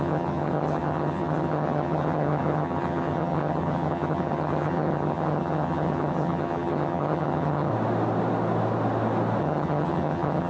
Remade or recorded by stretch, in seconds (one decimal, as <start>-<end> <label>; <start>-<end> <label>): 0.0-7.7 remade; 7.7-9.4 recorded; 9.4-10.5 remade